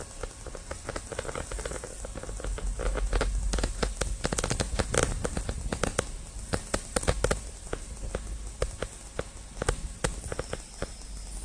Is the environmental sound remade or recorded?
recorded